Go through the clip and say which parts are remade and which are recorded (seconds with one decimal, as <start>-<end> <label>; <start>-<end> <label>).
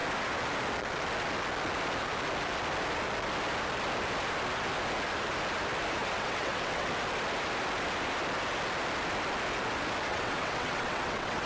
0.0-6.0 recorded; 6.0-6.9 remade; 6.9-10.1 recorded; 10.1-11.5 remade